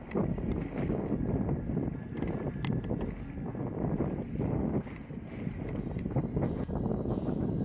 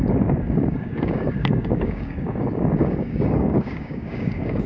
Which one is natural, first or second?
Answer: first